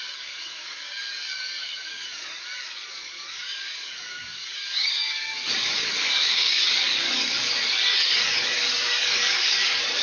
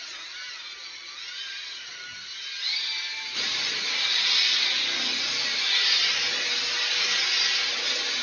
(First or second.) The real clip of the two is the second